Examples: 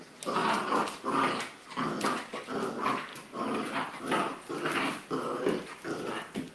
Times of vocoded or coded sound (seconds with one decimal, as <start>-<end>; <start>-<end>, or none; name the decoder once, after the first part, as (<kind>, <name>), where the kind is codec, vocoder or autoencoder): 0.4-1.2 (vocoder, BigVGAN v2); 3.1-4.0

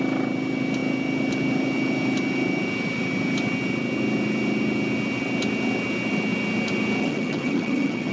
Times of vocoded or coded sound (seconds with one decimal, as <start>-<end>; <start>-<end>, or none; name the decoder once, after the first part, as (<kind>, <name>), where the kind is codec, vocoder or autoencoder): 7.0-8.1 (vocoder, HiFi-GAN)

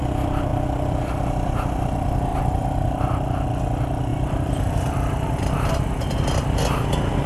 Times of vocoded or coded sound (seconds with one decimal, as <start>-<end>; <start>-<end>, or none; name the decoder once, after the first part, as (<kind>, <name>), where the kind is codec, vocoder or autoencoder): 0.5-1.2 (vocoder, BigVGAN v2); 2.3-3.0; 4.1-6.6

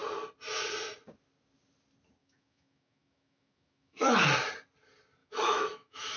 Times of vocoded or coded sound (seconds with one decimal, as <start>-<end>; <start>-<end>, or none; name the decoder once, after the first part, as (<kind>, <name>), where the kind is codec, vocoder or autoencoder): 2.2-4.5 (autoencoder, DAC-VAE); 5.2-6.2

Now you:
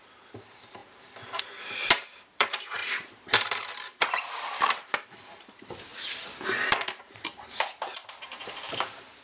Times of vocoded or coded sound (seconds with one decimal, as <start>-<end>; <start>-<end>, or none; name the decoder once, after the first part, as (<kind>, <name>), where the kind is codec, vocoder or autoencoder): 0.0-5.9 (vocoder, BigVGAN v2); 6.7-9.2